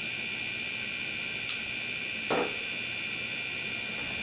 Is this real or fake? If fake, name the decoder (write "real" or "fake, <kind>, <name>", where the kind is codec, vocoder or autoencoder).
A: fake, vocoder, BigVGAN v2